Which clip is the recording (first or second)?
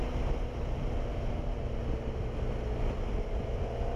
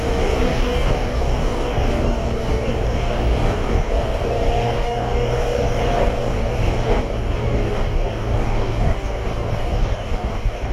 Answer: first